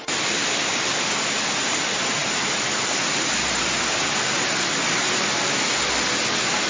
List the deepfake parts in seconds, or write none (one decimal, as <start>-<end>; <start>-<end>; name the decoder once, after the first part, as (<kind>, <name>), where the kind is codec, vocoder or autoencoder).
0.4-1.1 (vocoder, BigVGAN v2)